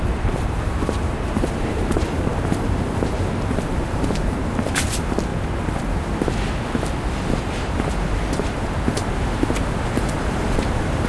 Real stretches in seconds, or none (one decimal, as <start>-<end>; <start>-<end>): 5.3-7.3